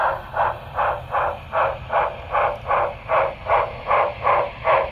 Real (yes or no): yes